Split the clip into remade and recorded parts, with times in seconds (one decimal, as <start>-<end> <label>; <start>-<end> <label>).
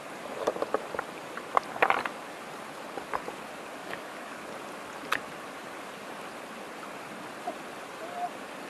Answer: 0.0-3.8 recorded; 3.8-4.4 remade; 4.4-8.7 recorded